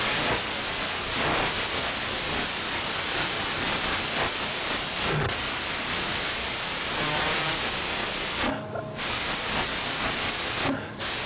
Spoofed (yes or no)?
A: no